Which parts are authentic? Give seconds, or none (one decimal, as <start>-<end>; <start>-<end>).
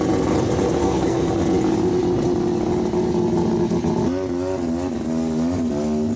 0.0-0.8; 1.3-6.2